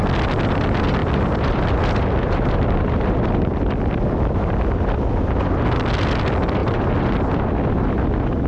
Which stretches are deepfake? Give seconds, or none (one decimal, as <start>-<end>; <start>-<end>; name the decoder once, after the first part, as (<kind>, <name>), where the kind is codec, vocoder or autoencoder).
1.0-4.6 (vocoder, BigVGAN v2)